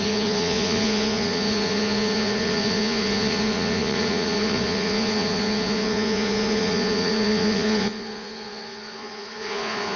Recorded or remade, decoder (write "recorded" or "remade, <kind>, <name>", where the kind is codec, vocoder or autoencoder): remade, vocoder, Vocos